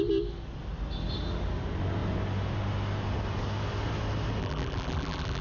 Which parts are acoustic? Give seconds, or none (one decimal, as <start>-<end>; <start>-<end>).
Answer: 0.0-4.4